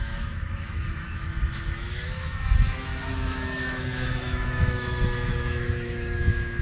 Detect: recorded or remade remade